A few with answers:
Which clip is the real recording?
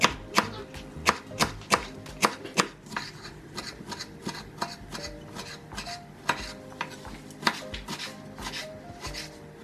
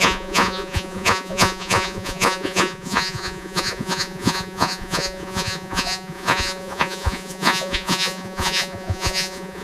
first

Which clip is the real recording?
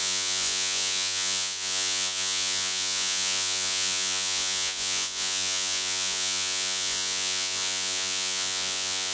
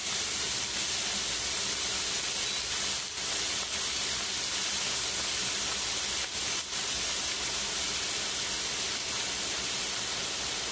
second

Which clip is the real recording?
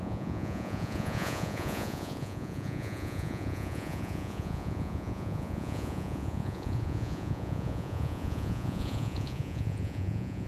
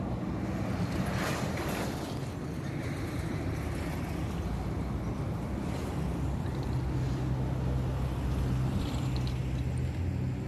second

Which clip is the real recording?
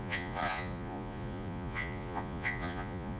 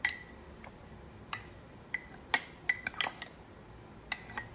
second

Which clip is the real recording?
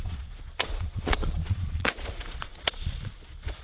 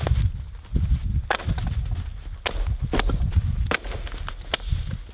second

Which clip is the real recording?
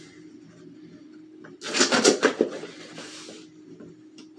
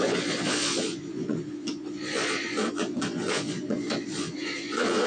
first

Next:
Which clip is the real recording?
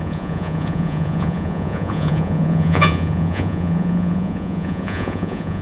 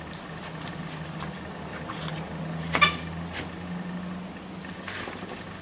second